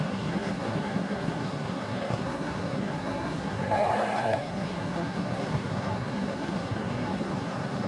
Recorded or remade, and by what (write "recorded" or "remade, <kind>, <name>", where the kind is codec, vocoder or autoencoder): remade, codec, SNAC